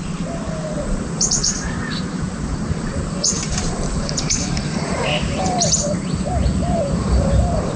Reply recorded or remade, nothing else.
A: remade